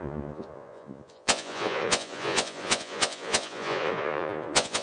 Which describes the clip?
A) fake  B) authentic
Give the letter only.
A